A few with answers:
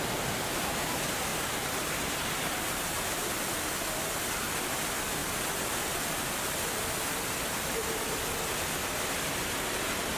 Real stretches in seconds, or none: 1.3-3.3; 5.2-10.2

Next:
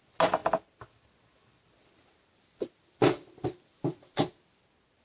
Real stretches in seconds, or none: 0.0-5.0

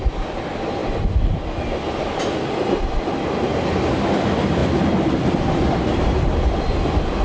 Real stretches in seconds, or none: 0.0-3.5; 4.0-7.2

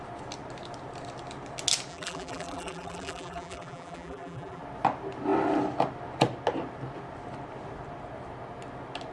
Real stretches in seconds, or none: 0.0-1.9; 4.6-9.1

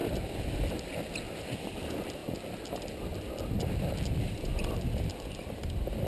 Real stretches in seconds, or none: 0.0-1.4; 2.2-3.8

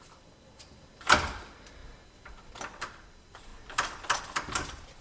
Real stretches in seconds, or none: 1.8-2.5; 3.5-4.2

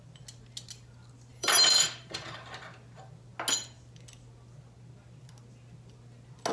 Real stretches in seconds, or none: 0.0-1.3; 2.6-6.5

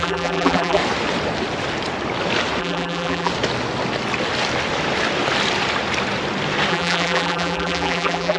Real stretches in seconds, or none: 0.8-2.6; 3.3-6.7